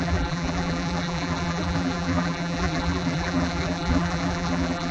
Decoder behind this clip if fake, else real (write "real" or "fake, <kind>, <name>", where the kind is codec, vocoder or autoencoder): fake, vocoder, BigVGAN v2